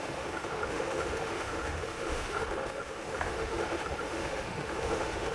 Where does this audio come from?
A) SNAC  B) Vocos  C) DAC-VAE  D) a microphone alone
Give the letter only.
C